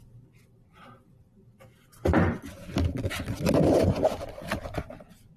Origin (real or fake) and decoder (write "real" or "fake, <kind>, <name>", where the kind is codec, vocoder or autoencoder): real